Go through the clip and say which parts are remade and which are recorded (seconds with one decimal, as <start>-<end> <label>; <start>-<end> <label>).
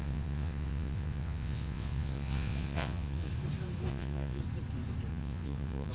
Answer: 0.0-3.3 remade; 3.3-3.9 recorded; 3.9-4.4 remade; 4.4-5.1 recorded; 5.1-5.9 remade